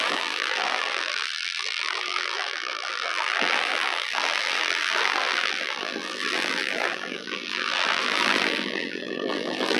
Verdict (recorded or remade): remade